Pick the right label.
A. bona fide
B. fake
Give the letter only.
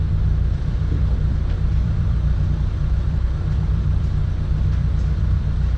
B